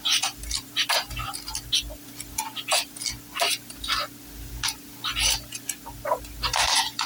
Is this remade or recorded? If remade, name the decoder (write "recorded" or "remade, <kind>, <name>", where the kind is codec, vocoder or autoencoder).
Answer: recorded